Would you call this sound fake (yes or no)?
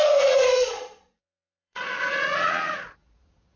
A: yes